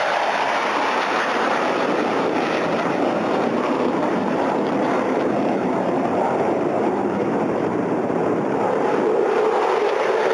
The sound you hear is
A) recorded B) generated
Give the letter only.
B